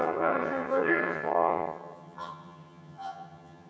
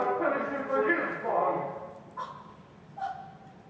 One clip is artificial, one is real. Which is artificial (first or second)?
first